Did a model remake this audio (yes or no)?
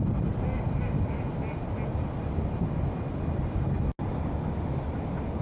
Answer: no